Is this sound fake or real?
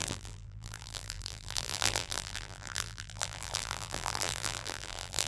fake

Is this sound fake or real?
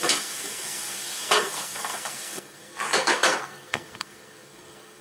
fake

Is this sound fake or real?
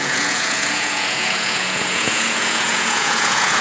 fake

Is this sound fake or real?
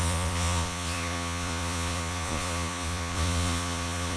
fake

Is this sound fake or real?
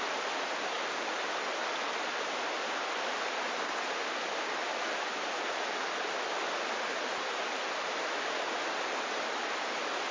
real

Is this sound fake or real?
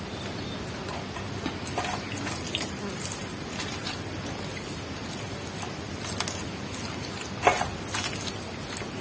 real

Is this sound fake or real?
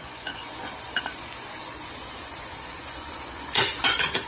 fake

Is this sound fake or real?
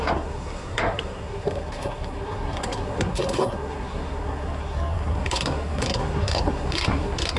fake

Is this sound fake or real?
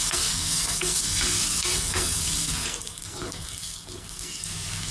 fake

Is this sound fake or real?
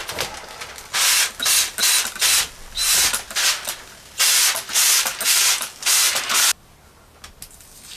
real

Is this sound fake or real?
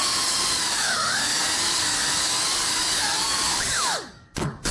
fake